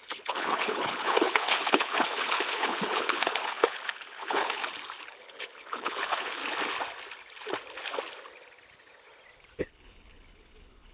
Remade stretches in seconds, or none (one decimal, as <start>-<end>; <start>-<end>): 0.0-4.6; 5.2-6.4; 9.6-10.9

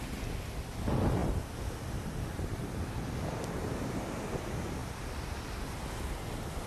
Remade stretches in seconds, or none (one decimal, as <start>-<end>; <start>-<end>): 1.2-2.9; 4.8-5.3

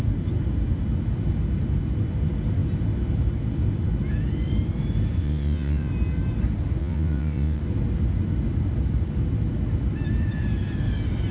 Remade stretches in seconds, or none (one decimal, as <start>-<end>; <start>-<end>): 5.2-5.9; 6.8-7.6

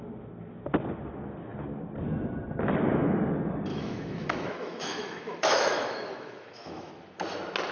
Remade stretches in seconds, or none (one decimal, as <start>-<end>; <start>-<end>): 3.7-6.9